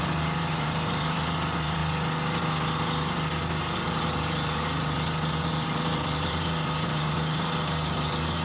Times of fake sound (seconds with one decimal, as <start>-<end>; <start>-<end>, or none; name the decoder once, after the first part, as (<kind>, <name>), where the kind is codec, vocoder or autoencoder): 0.0-1.8 (vocoder, BigVGAN v2); 3.6-8.4